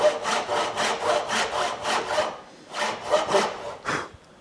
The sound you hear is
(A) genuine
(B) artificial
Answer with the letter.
A